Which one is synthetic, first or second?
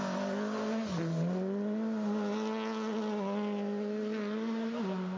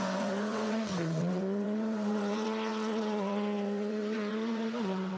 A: second